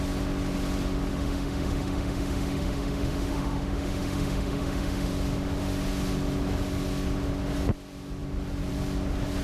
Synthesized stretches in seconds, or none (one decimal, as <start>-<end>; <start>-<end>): 1.1-5.1